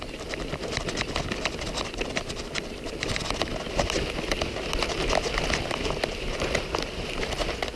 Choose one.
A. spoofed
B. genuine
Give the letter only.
B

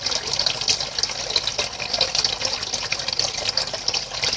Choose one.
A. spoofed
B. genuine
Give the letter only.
B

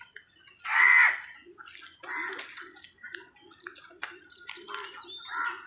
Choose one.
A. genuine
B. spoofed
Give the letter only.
A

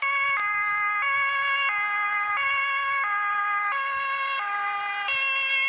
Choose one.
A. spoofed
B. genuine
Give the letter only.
B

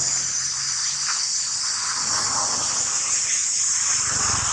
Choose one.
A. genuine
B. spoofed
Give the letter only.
A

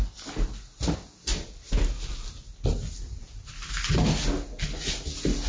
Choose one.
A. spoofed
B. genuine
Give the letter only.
B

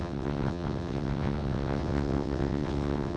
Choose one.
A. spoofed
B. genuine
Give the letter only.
A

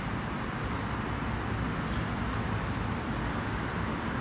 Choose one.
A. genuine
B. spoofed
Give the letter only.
A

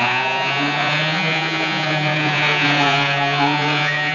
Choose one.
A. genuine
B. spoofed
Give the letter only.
B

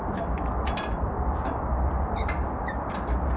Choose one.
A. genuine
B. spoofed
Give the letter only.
A